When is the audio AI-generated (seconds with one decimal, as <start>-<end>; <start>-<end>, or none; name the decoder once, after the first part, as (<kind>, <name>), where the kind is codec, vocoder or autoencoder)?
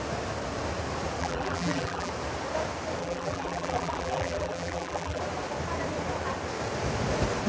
1.2-2.1 (vocoder, BigVGAN v2); 3.0-5.2